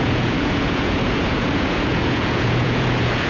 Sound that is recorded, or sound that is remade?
remade